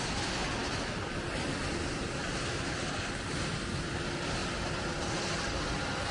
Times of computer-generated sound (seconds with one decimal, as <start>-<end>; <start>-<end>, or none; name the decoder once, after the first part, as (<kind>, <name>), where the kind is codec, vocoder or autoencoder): none